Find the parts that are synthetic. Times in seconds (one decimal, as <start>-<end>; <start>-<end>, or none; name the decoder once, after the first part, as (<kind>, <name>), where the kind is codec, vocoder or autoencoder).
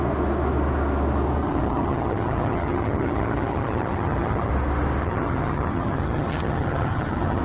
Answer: 1.4-4.5 (vocoder, HiFi-GAN); 5.0-7.4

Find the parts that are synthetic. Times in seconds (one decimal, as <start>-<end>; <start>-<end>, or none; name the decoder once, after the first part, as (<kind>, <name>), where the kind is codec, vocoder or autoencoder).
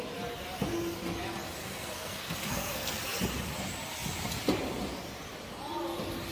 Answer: 1.6-3.2 (codec, SNAC)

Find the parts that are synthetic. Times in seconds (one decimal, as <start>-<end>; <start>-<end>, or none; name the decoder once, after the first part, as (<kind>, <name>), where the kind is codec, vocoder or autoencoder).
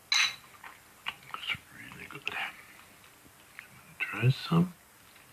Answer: none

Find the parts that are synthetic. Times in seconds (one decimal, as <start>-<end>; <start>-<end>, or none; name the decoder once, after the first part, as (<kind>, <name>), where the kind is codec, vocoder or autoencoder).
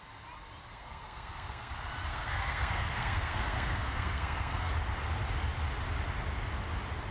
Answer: 0.7-1.7 (codec, SNAC); 2.1-4.7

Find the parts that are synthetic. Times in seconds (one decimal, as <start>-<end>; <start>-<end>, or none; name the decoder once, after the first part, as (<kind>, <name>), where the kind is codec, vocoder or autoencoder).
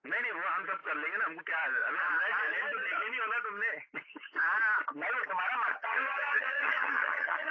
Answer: 5.7-7.5 (vocoder, HiFi-GAN)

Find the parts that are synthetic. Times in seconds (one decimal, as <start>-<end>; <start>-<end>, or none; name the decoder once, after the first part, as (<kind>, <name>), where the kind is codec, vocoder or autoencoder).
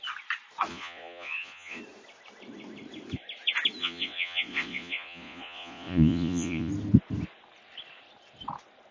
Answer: 0.7-1.8 (vocoder, Vocos); 3.8-6.7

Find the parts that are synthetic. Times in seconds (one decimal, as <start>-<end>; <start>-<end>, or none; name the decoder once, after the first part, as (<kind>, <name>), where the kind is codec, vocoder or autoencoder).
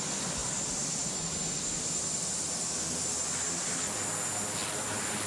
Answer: none